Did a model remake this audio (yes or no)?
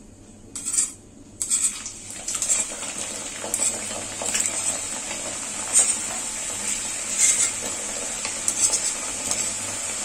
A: no